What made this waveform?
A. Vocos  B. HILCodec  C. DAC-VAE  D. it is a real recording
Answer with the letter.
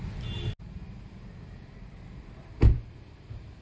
D